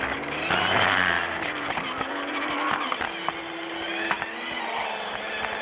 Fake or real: real